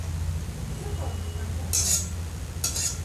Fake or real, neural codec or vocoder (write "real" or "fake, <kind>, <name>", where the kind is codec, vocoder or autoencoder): real